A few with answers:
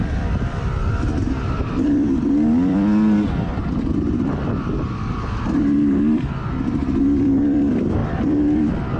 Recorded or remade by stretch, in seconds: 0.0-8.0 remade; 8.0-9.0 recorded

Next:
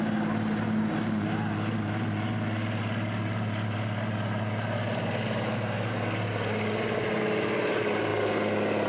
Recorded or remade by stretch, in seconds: 0.0-8.9 recorded

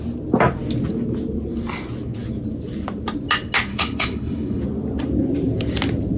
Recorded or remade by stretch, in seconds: 0.0-3.7 recorded; 3.7-4.6 remade; 4.6-6.2 recorded

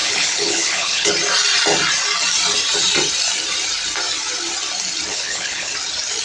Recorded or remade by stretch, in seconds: 0.0-1.1 remade; 1.1-5.1 recorded; 5.1-5.7 remade; 5.7-6.2 recorded